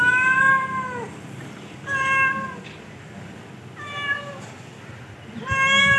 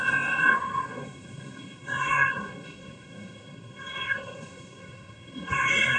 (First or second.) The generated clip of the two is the second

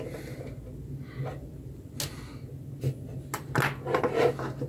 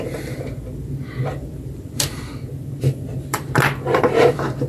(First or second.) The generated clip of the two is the second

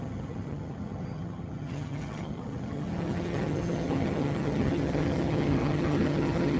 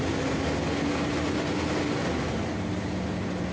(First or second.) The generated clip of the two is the first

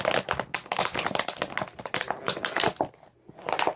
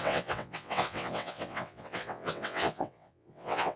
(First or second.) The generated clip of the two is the second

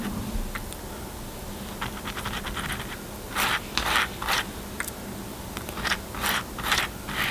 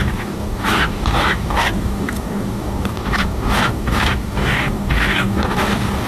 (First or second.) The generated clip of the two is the second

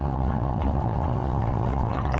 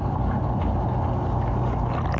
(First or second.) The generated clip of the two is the first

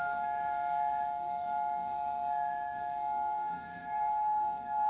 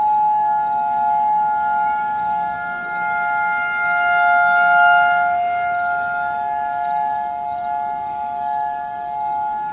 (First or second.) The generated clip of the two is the first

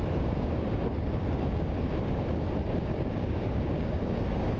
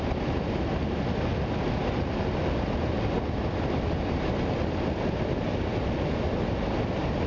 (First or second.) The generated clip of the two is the first